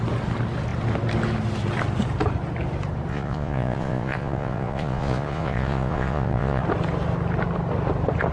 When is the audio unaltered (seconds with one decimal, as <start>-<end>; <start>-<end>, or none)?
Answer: 0.0-3.1; 6.6-8.3